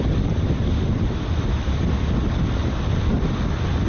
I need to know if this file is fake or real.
real